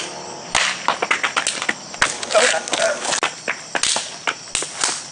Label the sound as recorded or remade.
recorded